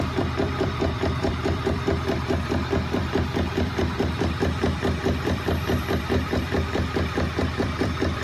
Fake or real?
fake